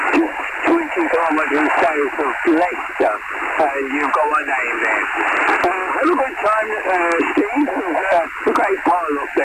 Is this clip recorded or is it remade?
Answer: recorded